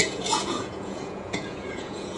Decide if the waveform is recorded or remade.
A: remade